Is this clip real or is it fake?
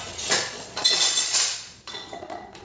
fake